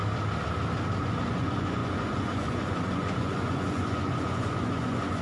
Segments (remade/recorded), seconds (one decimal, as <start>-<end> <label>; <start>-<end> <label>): 0.0-1.0 recorded; 1.0-5.2 remade